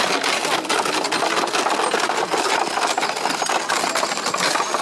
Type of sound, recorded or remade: recorded